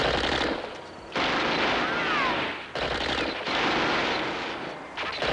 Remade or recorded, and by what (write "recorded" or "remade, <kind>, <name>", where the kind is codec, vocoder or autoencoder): recorded